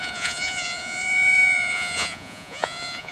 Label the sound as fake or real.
fake